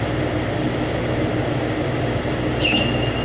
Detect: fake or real real